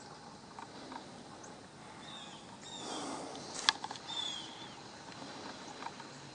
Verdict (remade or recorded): recorded